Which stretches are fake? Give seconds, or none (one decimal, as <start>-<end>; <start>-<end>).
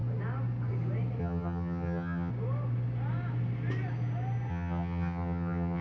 1.2-2.3; 4.5-5.8